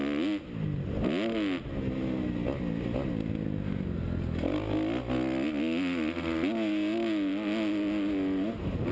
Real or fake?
real